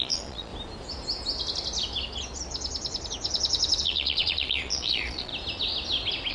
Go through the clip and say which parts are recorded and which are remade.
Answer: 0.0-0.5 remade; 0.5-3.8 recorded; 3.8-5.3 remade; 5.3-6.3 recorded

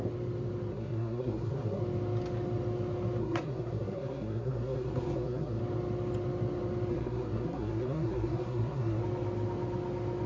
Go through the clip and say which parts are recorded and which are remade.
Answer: 0.0-0.7 recorded; 0.7-1.8 remade; 1.8-3.2 recorded; 3.2-5.6 remade; 5.6-6.9 recorded; 6.9-9.0 remade; 9.0-10.3 recorded

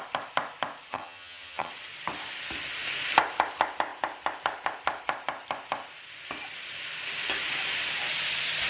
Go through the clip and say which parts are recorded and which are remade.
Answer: 0.0-0.9 recorded; 0.9-1.7 remade; 1.7-8.7 recorded

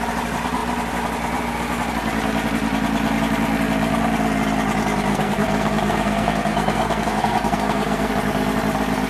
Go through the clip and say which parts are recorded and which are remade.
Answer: 0.0-5.1 recorded; 5.1-8.1 remade; 8.1-9.1 recorded

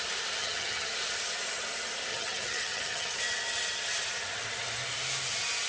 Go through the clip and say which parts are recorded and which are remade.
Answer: 0.0-0.4 recorded; 0.4-0.9 remade; 0.9-2.1 recorded; 2.1-3.2 remade; 3.2-5.7 recorded

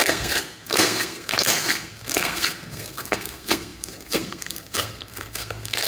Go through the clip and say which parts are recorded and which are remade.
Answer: 0.0-5.9 remade

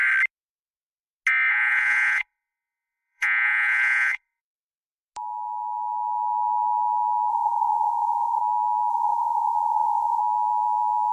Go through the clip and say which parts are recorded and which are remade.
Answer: 0.0-1.5 recorded; 1.5-4.4 remade; 4.4-7.3 recorded; 7.3-8.4 remade; 8.4-8.9 recorded; 8.9-10.2 remade; 10.2-11.1 recorded